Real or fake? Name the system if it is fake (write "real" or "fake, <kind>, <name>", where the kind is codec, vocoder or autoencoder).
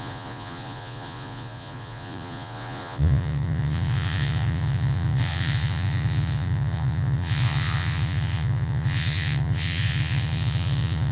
fake, vocoder, Vocos